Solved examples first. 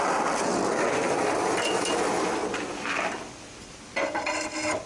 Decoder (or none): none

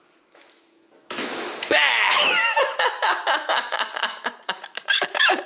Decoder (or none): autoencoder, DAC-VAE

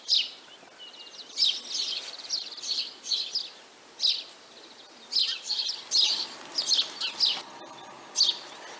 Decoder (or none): none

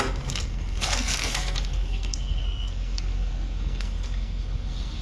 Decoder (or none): codec, SNAC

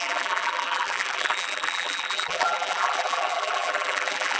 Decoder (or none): vocoder, BigVGAN v2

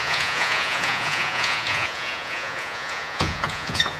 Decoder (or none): vocoder, Vocos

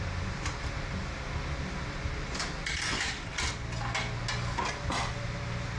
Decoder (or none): none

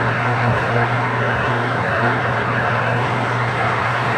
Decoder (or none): codec, SNAC